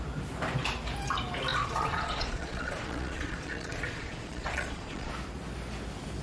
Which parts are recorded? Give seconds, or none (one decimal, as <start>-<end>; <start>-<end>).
0.0-1.5; 5.1-6.2